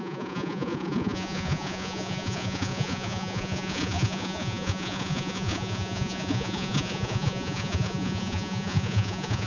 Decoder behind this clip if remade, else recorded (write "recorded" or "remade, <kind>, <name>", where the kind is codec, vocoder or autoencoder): remade, vocoder, Vocos